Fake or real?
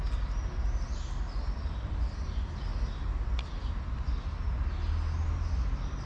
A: real